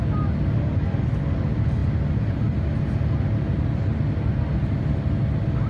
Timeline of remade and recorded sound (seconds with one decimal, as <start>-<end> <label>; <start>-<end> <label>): 0.0-5.7 recorded